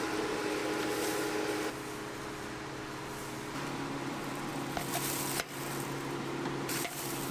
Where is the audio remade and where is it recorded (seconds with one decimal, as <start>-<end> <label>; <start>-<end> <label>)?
0.0-0.6 remade; 0.6-3.5 recorded; 3.5-4.5 remade; 4.5-6.7 recorded; 6.7-7.3 remade

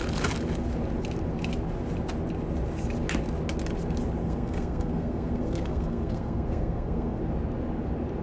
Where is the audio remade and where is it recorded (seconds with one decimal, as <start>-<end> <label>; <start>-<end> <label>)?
0.0-4.2 recorded; 4.2-7.2 remade; 7.2-8.2 recorded

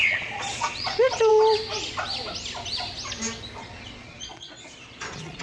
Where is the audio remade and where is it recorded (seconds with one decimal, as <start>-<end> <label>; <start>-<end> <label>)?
0.0-1.3 remade; 1.3-3.6 recorded; 3.6-5.4 remade

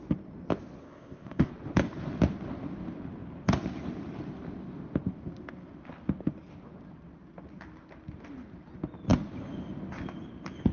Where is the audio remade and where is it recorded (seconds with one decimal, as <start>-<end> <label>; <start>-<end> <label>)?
0.0-0.8 recorded; 0.8-1.5 remade; 1.5-10.7 recorded

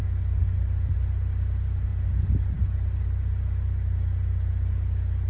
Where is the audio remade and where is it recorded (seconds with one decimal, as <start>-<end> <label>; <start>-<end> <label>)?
0.0-5.3 recorded